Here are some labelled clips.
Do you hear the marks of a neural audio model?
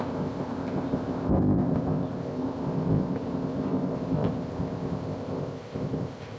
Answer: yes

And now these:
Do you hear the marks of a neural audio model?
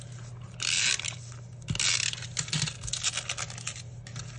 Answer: no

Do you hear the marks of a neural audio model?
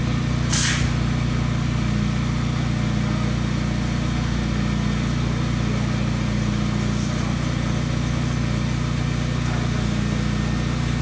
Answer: no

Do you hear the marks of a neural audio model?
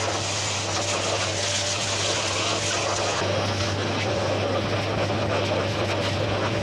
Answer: no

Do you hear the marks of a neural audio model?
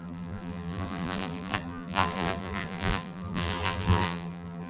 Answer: yes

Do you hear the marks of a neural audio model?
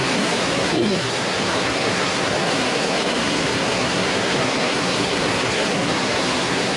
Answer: yes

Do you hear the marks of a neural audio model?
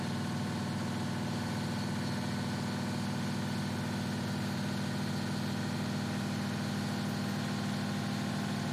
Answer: no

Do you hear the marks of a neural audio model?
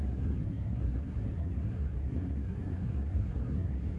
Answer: yes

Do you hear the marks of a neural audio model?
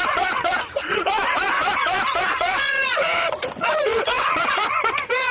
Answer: yes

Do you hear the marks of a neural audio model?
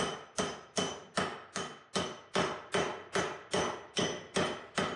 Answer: no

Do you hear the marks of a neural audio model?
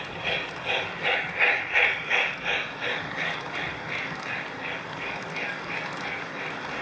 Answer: yes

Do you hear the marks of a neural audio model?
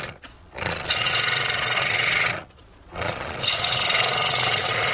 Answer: yes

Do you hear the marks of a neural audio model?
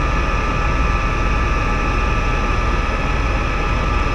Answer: no